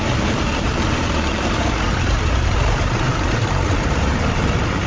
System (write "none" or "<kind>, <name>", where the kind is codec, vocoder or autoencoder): vocoder, BigVGAN v2